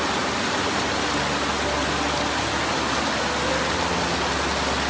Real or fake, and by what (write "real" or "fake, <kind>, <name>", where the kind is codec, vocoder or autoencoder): real